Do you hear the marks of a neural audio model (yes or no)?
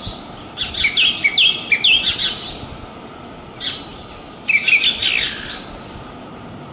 no